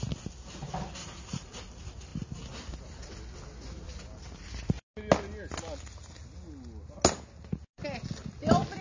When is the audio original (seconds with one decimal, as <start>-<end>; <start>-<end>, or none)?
0.0-1.0; 1.6-8.8